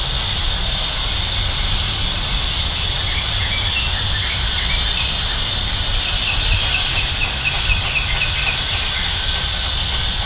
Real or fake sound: real